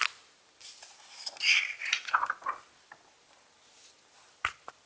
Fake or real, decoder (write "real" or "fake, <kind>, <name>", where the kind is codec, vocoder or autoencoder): real